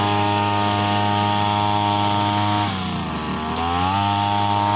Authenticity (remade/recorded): recorded